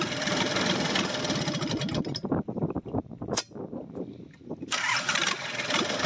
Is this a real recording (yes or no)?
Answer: yes